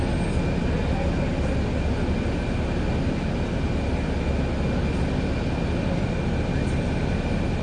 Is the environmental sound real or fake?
real